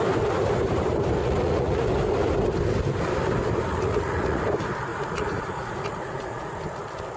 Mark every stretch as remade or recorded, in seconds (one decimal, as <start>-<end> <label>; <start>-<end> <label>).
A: 0.0-1.2 recorded; 1.2-1.8 remade; 1.8-3.7 recorded; 3.7-4.4 remade; 4.4-4.9 recorded; 4.9-6.5 remade; 6.5-7.2 recorded